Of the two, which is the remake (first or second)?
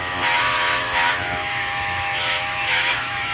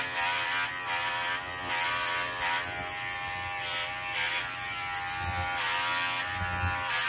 first